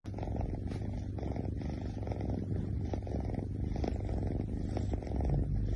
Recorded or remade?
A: recorded